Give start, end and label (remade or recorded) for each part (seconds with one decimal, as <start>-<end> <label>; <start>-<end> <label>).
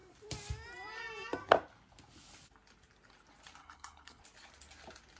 0.0-3.6 recorded; 3.6-4.2 remade; 4.2-5.2 recorded